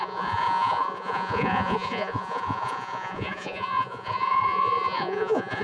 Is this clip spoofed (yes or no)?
yes